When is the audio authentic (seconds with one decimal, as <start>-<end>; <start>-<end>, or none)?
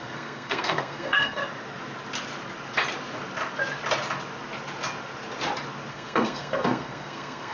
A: 1.4-5.9